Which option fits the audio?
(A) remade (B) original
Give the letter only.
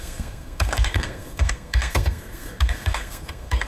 A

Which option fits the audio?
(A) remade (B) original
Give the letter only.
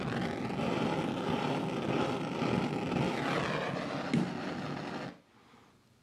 B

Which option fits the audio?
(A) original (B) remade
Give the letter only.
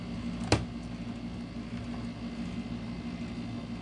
A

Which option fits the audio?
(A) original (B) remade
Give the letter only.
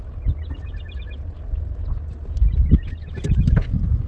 A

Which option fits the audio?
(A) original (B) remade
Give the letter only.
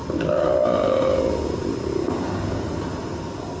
A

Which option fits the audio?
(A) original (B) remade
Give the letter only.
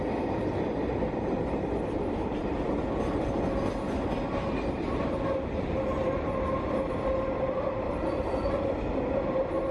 A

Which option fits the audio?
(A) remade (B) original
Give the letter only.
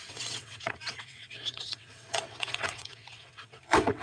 A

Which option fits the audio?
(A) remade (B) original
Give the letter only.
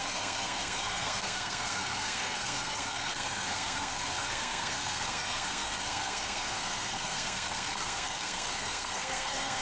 A